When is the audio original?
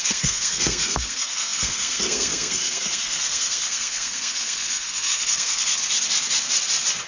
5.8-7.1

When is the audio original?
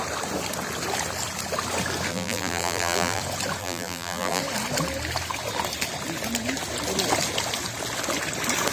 0.0-2.1; 3.2-3.6; 4.4-8.7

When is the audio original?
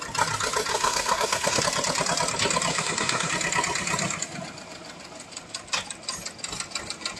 0.0-0.7; 1.6-2.7; 3.3-7.2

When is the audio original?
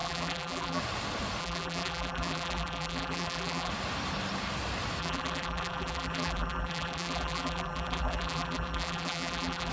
0.8-1.4; 3.7-5.0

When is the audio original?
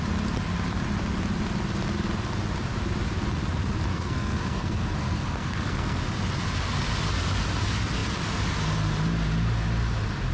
0.0-3.9; 6.0-10.3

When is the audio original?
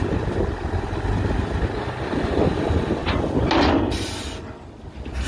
0.0-5.3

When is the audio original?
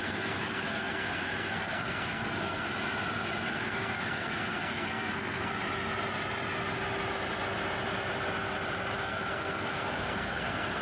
2.7-3.5; 5.6-9.0